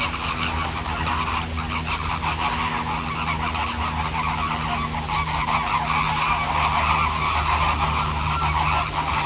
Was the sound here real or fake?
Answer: real